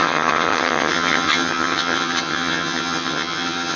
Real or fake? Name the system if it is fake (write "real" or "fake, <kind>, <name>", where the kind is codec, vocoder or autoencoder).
fake, vocoder, HiFi-GAN